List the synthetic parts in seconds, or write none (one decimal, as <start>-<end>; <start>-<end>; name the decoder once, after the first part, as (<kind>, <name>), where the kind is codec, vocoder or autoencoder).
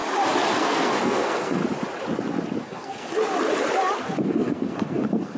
0.5-1.6 (codec, SNAC); 2.6-3.2; 4.0-5.4